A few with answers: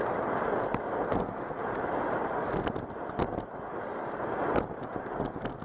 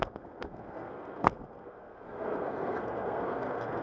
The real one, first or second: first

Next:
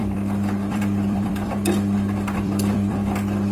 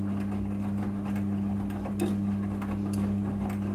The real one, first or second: second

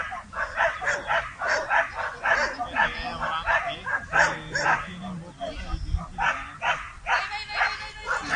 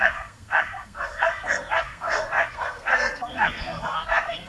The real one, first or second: first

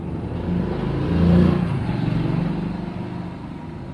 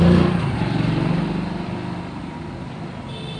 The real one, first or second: first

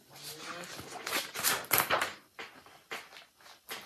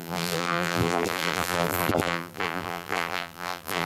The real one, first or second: first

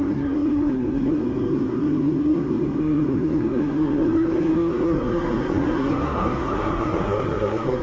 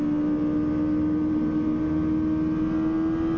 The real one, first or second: second